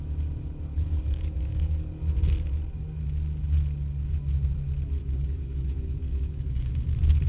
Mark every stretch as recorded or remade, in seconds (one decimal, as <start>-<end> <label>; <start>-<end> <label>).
0.0-0.7 recorded; 0.7-1.9 remade; 1.9-5.0 recorded; 5.0-6.7 remade; 6.7-7.3 recorded